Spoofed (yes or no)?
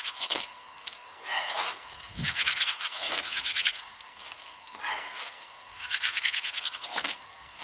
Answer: yes